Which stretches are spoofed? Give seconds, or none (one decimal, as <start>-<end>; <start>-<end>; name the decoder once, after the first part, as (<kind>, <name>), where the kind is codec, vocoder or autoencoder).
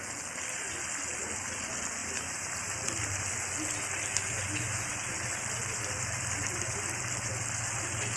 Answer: 2.0-2.7 (vocoder, BigVGAN v2)